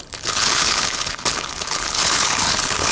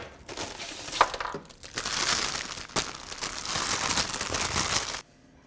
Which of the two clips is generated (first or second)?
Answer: first